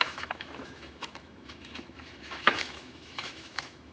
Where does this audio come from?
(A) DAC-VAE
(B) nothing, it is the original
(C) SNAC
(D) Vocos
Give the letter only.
A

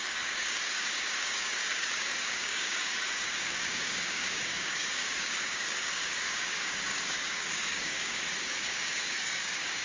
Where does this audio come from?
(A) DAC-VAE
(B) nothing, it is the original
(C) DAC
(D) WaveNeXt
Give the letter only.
C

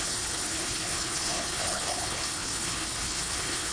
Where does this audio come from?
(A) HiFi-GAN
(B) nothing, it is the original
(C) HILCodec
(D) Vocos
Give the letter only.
C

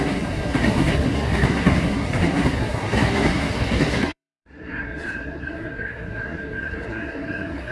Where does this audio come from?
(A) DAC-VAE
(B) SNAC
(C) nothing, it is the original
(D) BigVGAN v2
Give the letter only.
B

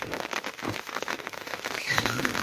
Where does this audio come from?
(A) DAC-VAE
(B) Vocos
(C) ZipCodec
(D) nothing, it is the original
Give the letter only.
A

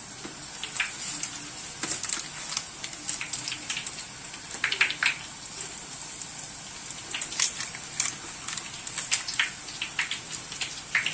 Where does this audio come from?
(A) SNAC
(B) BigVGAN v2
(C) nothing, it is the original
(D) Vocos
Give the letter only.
C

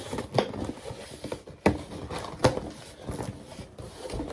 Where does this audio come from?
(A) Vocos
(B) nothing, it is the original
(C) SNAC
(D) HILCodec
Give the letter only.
B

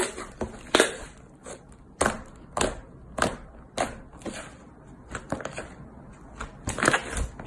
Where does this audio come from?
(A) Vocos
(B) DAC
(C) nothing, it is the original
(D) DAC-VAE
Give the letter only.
C